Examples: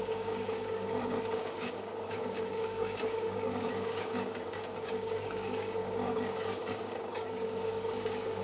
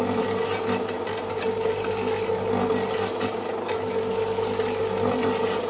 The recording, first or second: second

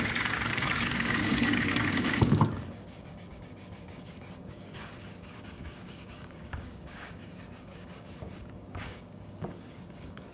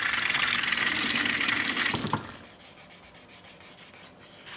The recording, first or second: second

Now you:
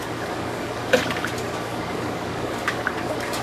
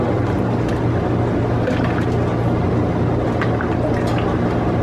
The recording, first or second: second